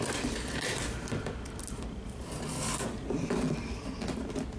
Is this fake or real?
real